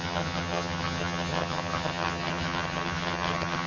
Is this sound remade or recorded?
remade